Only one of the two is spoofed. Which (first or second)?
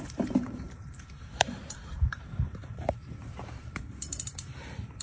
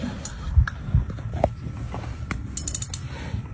first